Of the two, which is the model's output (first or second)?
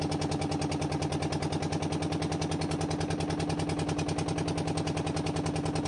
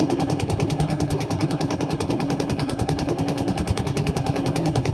second